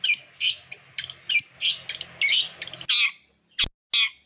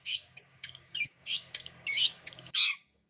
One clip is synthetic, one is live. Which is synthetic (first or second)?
second